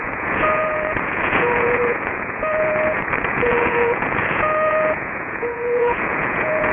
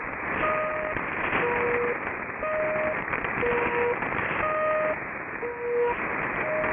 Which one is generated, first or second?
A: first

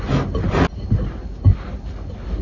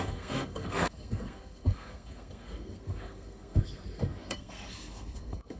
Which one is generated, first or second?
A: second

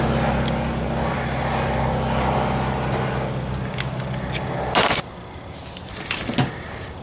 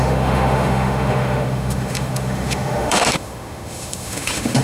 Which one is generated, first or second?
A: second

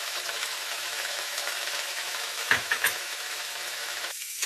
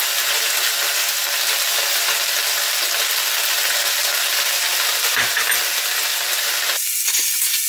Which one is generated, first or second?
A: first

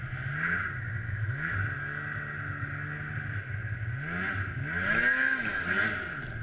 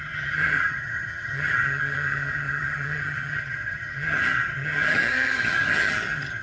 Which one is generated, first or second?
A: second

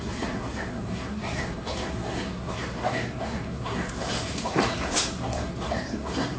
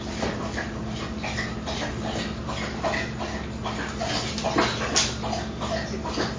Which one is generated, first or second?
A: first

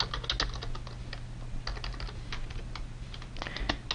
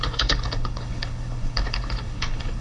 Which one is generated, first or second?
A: second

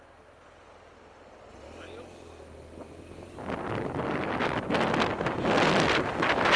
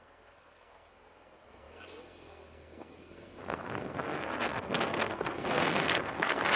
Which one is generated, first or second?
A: second